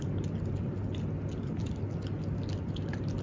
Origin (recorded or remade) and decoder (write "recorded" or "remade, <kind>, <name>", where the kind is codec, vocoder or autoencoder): recorded